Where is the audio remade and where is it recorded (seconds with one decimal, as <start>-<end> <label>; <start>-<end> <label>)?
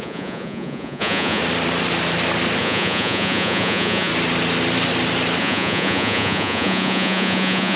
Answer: 0.0-1.4 remade; 1.4-2.6 recorded; 2.6-4.1 remade; 4.1-5.4 recorded; 5.4-7.8 remade